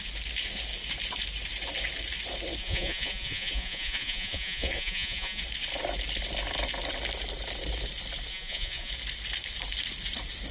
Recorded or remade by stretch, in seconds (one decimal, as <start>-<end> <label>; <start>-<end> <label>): 0.0-2.6 recorded; 2.6-5.4 remade; 5.4-8.3 recorded; 8.3-8.9 remade; 8.9-10.5 recorded